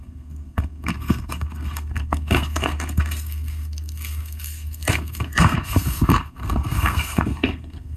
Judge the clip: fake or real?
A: fake